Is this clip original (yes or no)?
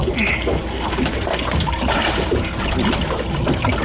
yes